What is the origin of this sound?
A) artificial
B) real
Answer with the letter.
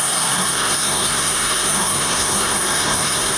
A